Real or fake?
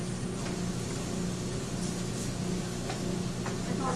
real